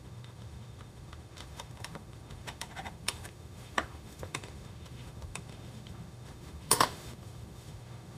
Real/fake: fake